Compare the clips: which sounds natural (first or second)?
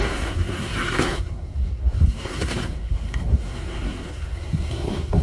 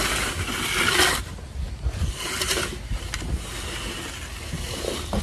second